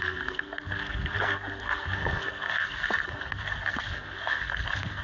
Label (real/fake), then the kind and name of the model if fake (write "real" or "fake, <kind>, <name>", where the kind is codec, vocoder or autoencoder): fake, codec, SNAC